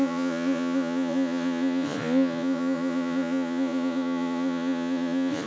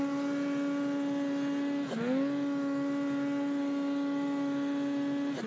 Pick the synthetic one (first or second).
first